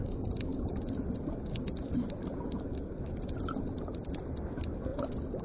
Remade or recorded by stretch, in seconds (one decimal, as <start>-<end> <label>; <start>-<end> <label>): 0.0-5.4 recorded